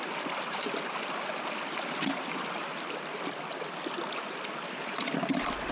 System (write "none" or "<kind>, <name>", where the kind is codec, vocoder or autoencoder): none